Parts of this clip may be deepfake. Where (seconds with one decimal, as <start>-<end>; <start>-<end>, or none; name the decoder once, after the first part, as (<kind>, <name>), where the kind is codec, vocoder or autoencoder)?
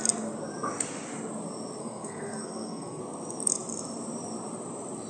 1.8-3.0 (codec, SNAC)